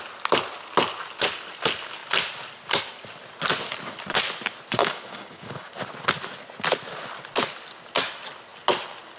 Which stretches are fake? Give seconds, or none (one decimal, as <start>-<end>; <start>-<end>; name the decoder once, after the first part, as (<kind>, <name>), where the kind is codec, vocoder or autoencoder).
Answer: 4.8-5.7 (codec, DAC)